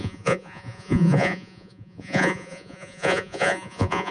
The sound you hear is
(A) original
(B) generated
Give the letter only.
B